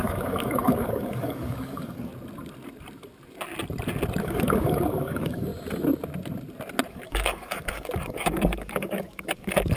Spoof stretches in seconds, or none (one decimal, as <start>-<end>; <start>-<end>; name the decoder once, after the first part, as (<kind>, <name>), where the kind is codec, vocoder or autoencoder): 0.0-2.1 (codec, DAC); 4.2-5.5; 6.9-9.8